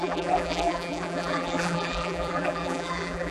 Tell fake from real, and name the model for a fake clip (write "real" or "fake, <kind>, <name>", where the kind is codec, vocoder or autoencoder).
fake, vocoder, BigVGAN v2